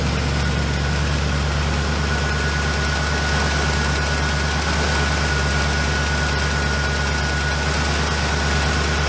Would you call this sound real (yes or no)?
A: yes